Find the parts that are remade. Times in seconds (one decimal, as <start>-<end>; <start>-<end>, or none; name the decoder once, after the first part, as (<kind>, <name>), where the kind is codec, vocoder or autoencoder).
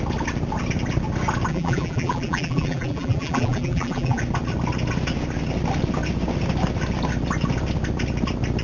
1.5-4.2 (vocoder, BigVGAN v2)